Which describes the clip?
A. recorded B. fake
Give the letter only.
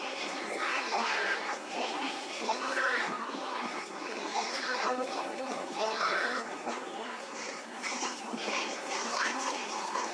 B